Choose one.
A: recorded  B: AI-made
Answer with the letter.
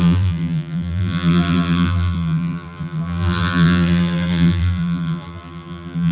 B